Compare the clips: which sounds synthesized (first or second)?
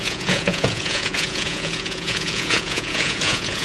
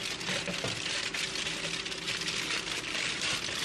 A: first